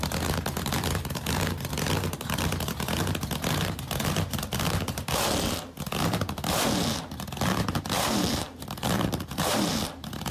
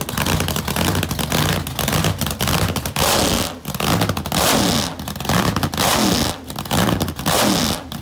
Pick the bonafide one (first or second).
second